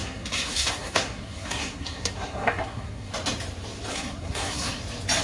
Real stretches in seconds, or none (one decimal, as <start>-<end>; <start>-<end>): 3.1-3.9; 4.8-5.2

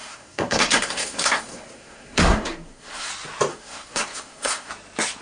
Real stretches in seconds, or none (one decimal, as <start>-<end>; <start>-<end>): 3.1-3.5; 4.7-5.2

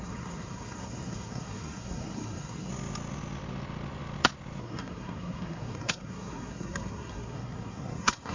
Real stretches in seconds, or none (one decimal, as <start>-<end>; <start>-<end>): 2.7-4.6

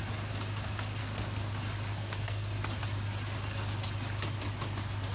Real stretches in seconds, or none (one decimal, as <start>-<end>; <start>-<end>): 0.0-1.0; 1.5-1.9; 2.6-5.1

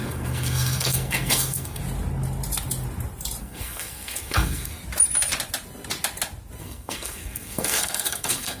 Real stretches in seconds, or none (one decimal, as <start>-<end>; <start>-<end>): 1.8-3.4; 4.8-6.6